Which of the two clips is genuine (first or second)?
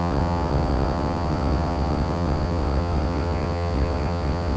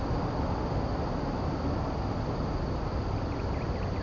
second